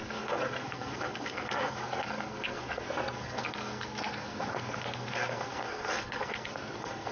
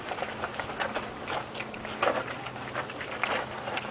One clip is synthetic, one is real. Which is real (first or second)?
second